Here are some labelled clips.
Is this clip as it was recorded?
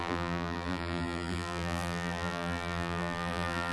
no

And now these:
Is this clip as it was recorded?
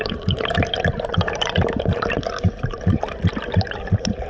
no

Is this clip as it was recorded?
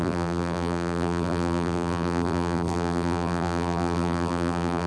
no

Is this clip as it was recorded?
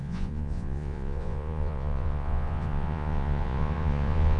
no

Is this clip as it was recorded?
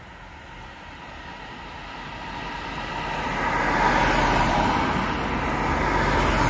yes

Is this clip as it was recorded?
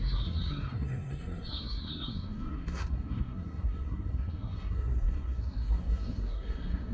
no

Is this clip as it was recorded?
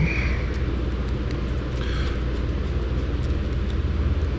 yes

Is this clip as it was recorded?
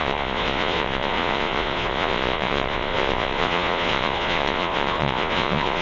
no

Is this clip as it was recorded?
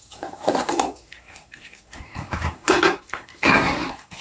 no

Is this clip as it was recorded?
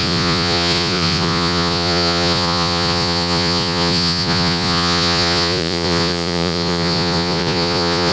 no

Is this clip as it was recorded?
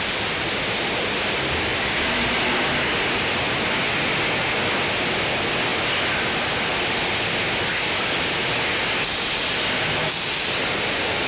yes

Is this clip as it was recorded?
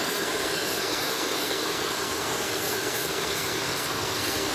no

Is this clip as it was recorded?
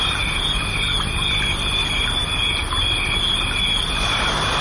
yes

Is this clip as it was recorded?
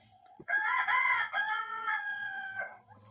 no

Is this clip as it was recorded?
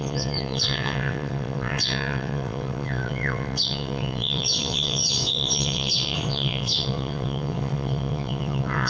no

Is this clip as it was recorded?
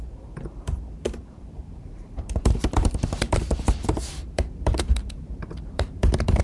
no